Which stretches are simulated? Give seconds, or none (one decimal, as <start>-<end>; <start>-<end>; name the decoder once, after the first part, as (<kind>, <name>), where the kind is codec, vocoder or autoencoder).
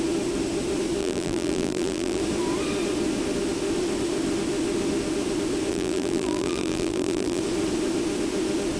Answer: 1.0-2.2 (vocoder, BigVGAN v2); 5.7-7.4